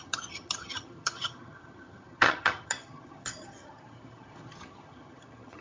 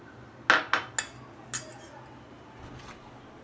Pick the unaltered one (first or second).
second